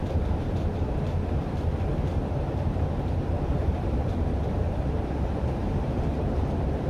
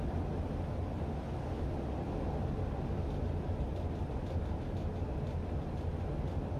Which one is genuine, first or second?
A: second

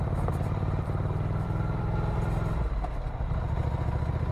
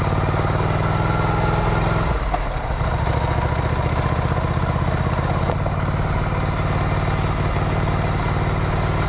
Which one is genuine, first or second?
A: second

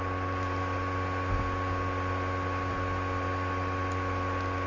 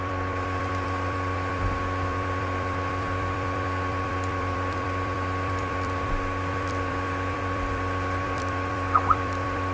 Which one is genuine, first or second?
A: first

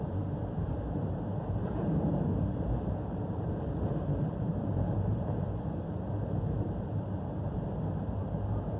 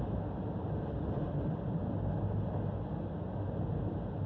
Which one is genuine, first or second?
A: second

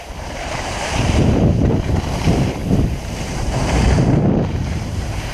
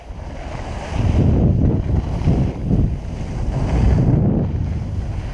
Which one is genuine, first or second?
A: second